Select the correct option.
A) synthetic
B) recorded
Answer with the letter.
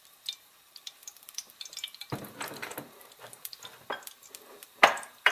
A